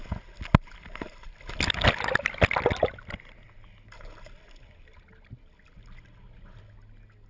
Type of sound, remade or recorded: recorded